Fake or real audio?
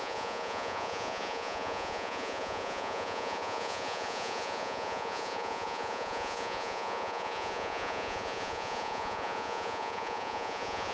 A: fake